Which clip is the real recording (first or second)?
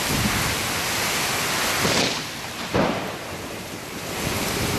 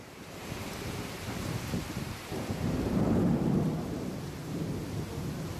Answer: first